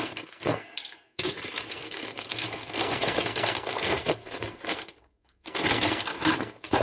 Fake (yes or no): yes